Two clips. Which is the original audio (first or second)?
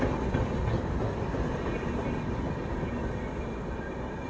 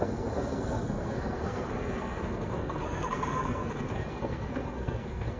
first